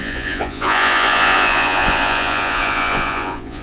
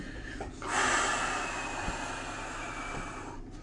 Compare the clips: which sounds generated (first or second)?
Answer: first